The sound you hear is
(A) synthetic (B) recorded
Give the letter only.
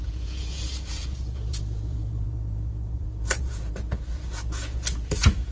A